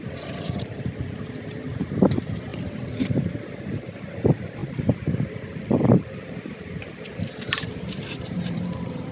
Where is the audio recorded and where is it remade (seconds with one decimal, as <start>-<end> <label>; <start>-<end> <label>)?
0.0-9.1 remade